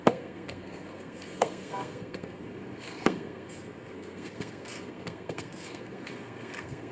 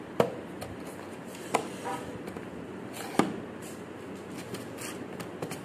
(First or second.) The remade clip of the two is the first